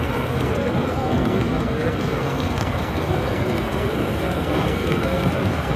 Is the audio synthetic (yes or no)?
yes